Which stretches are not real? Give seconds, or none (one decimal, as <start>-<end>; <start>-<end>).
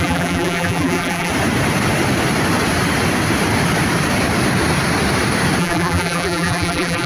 0.0-1.3; 5.6-7.1